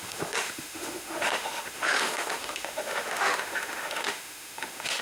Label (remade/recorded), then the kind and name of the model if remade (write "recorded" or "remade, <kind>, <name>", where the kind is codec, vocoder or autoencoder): remade, autoencoder, DAC-VAE